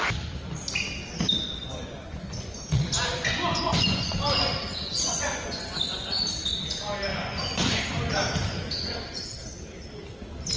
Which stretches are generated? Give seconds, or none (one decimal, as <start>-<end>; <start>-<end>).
1.6-6.2; 7.1-7.8; 8.4-9.3